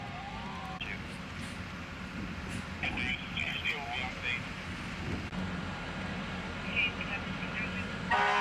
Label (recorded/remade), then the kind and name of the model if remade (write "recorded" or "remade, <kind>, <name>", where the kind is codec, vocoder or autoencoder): recorded